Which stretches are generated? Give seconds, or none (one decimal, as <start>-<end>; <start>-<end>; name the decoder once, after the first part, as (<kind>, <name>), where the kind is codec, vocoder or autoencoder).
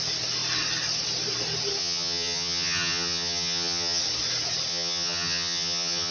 1.8-4.0 (vocoder, HiFi-GAN); 4.7-6.1